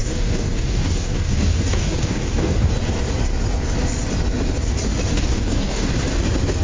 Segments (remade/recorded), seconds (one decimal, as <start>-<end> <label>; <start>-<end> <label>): 0.0-2.7 remade; 2.7-5.1 recorded; 5.1-5.9 remade; 5.9-6.6 recorded